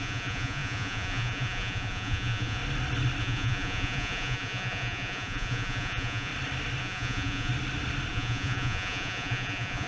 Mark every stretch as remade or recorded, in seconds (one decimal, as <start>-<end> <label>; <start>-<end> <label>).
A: 0.0-2.6 remade; 2.6-3.2 recorded; 3.2-6.3 remade; 6.3-6.8 recorded; 6.8-7.5 remade; 7.5-8.1 recorded; 8.1-9.9 remade